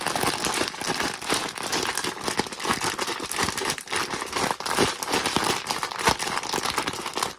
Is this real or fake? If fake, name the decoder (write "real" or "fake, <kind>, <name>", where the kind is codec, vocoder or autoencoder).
real